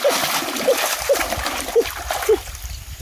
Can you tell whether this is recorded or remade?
recorded